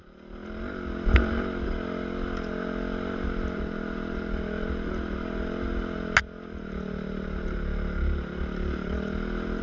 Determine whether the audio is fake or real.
real